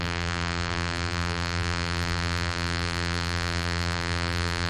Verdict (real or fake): fake